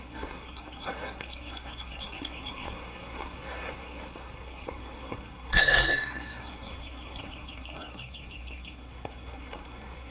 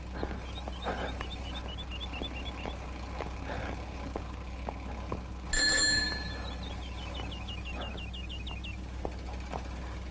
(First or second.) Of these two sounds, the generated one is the first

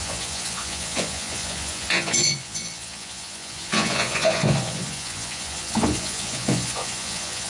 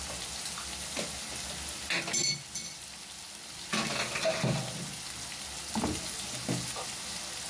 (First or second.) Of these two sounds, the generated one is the first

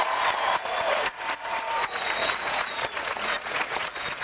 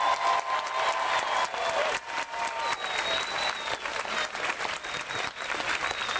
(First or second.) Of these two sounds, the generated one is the first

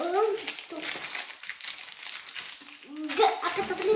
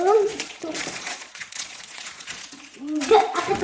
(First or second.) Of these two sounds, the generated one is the second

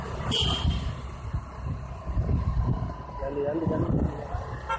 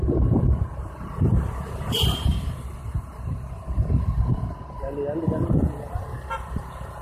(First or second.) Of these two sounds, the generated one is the second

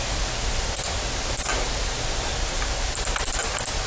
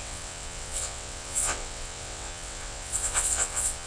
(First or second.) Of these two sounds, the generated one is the second